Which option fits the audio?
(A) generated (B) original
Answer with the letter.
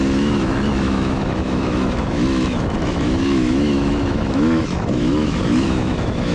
A